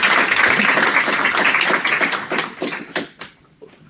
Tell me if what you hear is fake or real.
real